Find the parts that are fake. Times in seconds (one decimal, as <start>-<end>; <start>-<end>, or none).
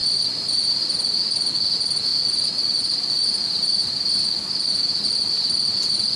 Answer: 0.0-1.1